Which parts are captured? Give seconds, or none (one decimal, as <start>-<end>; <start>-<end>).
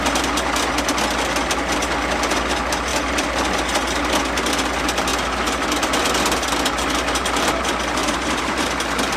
0.0-2.9; 3.4-8.0; 8.7-9.2